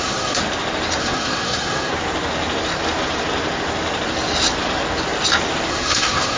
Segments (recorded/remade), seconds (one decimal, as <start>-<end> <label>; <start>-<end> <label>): 0.0-0.4 remade; 0.4-1.0 recorded; 1.0-1.9 remade; 1.9-5.7 recorded; 5.7-6.4 remade